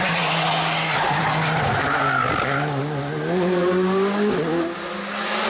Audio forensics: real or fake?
real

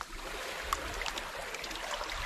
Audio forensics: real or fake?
real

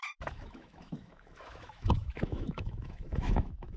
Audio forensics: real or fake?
fake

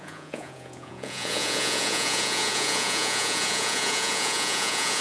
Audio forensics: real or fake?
fake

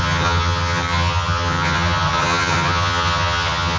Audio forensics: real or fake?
fake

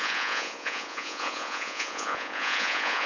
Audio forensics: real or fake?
fake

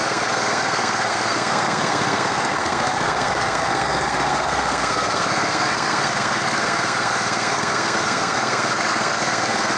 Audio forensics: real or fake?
fake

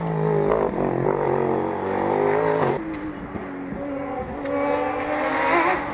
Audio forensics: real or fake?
real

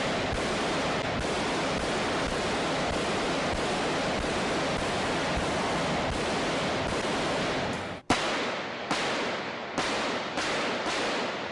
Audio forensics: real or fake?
real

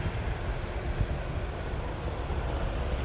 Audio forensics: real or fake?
real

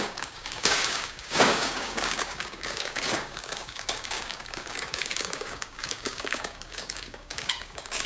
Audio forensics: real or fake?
fake